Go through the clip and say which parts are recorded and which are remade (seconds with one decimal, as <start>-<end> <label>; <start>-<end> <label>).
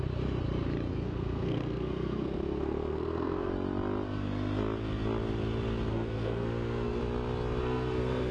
0.0-0.9 recorded; 0.9-3.5 remade; 3.5-5.9 recorded; 5.9-7.0 remade; 7.0-7.6 recorded; 7.6-8.3 remade